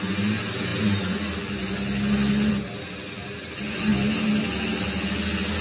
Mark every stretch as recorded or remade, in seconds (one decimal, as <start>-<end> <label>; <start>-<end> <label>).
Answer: 0.0-5.6 recorded